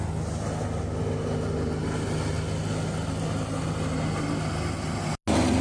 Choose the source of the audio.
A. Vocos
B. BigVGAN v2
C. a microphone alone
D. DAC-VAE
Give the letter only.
C